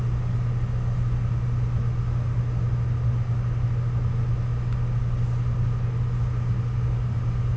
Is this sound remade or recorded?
recorded